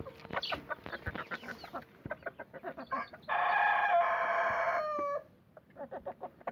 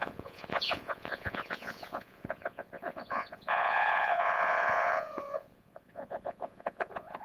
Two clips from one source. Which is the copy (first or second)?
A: second